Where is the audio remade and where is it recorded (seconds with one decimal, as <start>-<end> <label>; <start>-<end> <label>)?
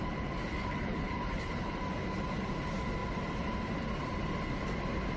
0.0-0.5 recorded; 0.5-1.8 remade; 1.8-5.2 recorded